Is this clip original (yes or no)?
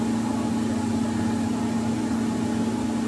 yes